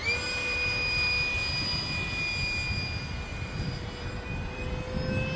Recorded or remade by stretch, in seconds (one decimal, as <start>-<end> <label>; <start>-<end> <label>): 0.0-3.3 recorded; 3.3-4.8 remade; 4.8-5.4 recorded